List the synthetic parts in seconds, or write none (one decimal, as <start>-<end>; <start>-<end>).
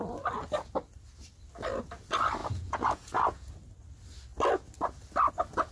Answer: 2.4-3.5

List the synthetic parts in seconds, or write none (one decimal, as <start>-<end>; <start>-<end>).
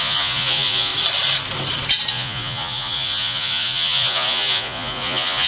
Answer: 0.0-0.9; 2.1-5.5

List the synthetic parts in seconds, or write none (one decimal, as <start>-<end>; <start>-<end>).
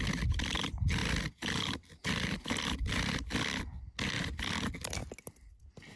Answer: none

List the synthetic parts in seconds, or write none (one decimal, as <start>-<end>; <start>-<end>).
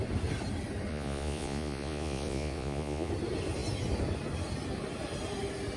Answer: 0.9-3.1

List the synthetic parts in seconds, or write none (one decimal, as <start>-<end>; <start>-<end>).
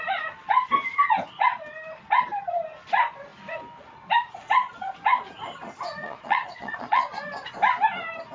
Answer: 6.0-7.0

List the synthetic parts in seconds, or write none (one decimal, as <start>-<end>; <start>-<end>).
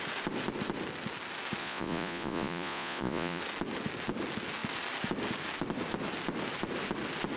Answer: 1.6-3.4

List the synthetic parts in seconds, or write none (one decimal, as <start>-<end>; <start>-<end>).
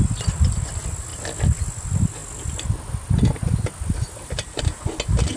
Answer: none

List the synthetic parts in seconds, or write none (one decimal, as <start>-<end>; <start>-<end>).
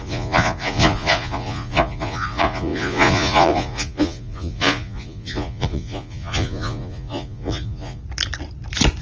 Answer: 0.0-8.0